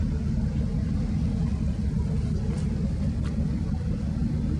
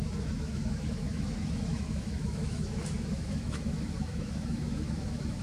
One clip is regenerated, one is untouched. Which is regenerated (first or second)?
second